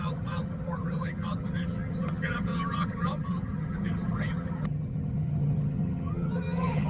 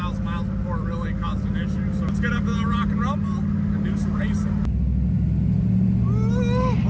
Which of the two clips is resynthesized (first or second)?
first